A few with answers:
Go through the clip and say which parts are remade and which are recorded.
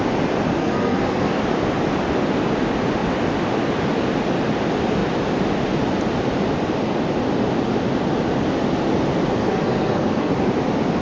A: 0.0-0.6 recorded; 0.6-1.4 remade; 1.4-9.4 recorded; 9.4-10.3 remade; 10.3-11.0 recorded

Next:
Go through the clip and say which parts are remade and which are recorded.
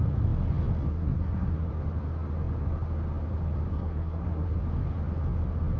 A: 0.0-0.9 recorded; 0.9-1.7 remade; 1.7-3.7 recorded; 3.7-4.6 remade; 4.6-5.8 recorded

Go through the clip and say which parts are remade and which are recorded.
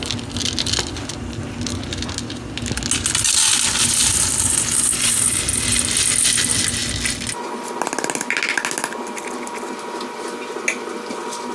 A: 0.0-11.5 recorded